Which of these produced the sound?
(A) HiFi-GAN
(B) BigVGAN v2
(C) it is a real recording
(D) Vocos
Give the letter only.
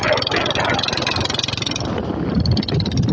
C